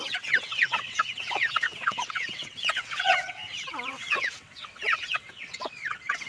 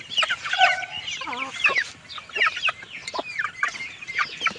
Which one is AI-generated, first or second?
first